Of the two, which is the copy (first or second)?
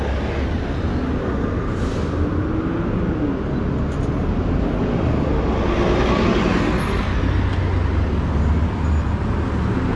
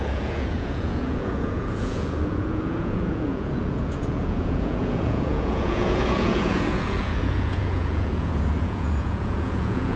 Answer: second